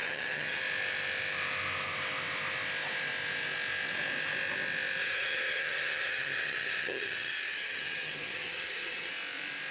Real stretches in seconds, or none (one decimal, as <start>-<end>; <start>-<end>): 0.6-5.0; 9.1-9.7